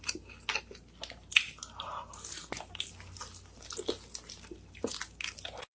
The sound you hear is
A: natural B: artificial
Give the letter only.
A